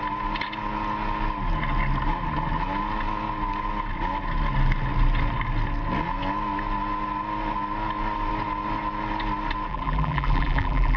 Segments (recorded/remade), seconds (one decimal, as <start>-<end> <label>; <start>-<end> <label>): 0.0-9.7 recorded; 9.7-11.0 remade